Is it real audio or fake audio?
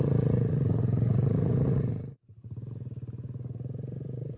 fake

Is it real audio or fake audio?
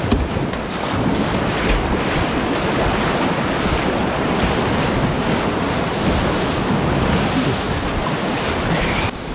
real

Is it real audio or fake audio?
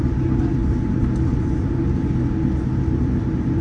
real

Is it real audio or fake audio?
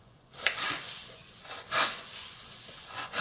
fake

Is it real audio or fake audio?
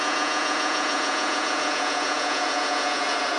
fake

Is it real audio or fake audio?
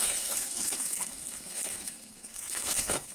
fake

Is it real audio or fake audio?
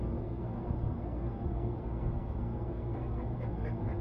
fake